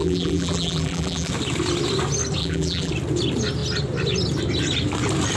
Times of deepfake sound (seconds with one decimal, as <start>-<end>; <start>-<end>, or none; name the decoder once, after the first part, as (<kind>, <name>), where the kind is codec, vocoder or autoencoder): 0.0-1.3 (vocoder, BigVGAN v2); 2.4-2.9